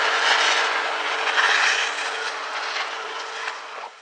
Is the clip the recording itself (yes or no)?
no